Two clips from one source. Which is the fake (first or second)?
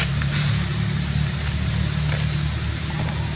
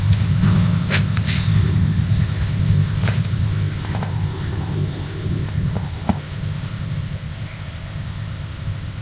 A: second